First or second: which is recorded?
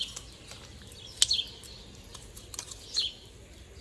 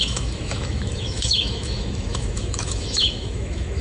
first